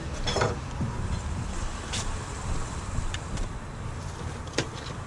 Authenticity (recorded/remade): recorded